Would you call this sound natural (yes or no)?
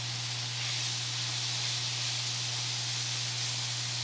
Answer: yes